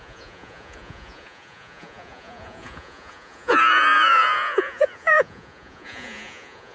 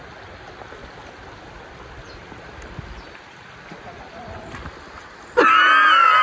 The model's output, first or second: first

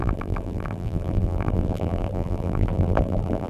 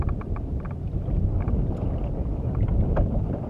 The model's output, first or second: first